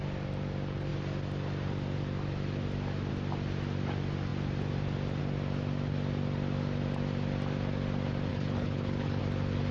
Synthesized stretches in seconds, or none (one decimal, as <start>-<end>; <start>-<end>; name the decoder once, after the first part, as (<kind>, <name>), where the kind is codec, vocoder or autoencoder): 8.3-9.2 (codec, HILCodec)